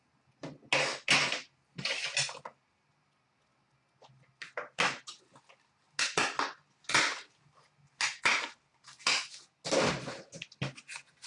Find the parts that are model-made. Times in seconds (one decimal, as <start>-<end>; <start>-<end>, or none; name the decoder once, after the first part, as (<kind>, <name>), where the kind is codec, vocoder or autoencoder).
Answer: none